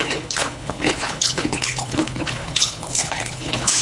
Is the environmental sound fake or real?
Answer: fake